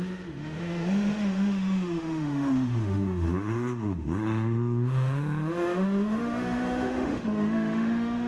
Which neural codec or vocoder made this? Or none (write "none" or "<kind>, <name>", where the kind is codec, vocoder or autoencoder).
autoencoder, DAC-VAE